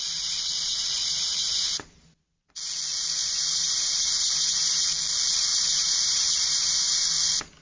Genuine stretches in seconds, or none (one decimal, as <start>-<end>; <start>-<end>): 0.0-1.7; 2.5-5.5; 6.7-7.6